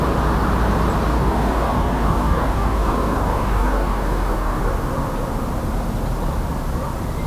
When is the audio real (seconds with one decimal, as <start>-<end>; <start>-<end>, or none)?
0.0-1.1; 4.6-7.3